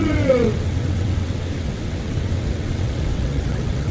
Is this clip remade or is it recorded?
remade